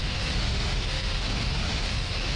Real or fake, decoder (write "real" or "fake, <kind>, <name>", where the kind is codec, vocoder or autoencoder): fake, autoencoder, DAC-VAE